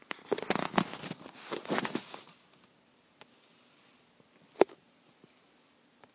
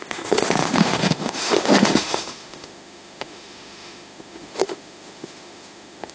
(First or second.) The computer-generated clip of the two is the second